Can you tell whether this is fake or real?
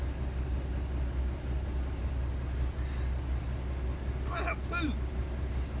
real